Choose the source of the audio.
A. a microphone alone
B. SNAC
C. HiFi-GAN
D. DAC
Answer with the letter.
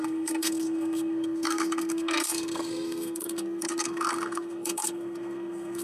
B